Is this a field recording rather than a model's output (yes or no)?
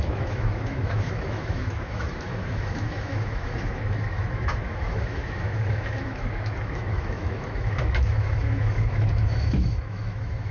no